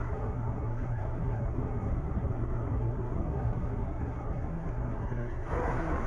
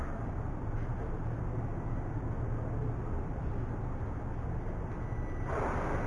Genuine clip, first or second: second